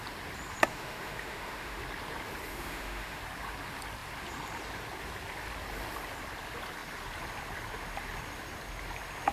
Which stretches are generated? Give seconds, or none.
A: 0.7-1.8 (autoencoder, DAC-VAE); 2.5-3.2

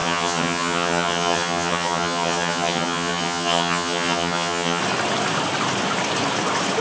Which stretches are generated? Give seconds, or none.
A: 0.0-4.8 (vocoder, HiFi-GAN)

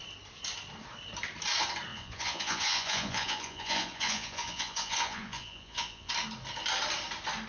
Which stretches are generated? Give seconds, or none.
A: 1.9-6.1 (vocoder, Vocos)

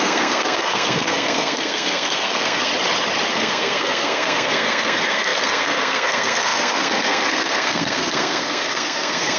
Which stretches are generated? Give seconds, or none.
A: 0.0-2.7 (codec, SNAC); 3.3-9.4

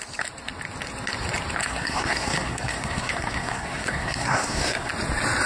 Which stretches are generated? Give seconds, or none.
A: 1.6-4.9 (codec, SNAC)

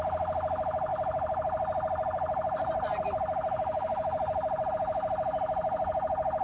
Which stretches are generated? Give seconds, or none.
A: 0.9-4.7 (vocoder, BigVGAN v2)

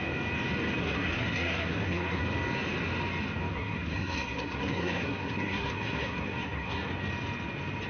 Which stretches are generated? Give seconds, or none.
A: 0.8-2.2 (codec, SNAC); 3.5-6.9